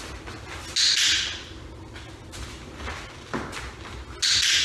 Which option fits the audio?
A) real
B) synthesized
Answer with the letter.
A